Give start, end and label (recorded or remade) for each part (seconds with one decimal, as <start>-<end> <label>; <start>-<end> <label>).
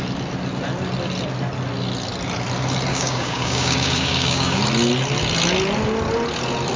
0.0-2.9 recorded; 2.9-4.6 remade; 4.6-6.8 recorded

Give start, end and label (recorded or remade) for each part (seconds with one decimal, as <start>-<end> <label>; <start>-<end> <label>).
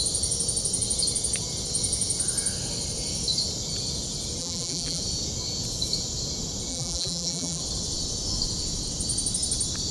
0.0-4.4 recorded; 4.4-5.0 remade; 5.0-6.7 recorded; 6.7-7.6 remade; 7.6-9.9 recorded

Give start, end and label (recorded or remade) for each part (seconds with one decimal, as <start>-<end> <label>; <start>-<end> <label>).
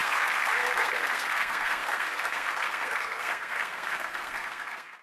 0.0-5.0 remade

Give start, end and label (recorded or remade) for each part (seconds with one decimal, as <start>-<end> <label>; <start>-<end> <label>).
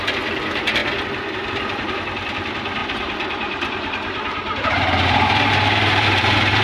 0.0-2.8 recorded; 2.8-6.6 remade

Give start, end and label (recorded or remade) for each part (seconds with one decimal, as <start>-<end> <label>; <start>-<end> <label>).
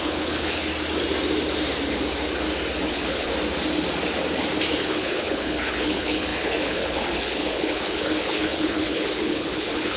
0.0-0.6 remade; 0.6-2.9 recorded; 2.9-3.3 remade; 3.3-4.7 recorded; 4.7-10.0 remade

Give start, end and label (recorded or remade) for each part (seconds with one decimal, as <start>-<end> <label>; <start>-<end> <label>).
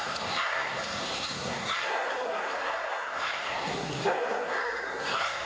0.0-5.5 remade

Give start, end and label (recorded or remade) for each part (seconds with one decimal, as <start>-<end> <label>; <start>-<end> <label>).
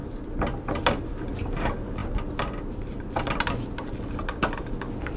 0.0-5.2 recorded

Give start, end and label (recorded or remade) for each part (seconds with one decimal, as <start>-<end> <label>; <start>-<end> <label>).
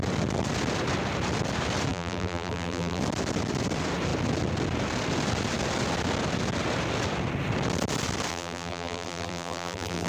0.0-1.9 recorded; 1.9-3.0 remade; 3.0-8.3 recorded; 8.3-10.1 remade